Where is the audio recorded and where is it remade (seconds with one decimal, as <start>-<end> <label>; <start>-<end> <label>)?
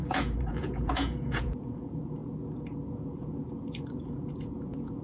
0.0-5.0 remade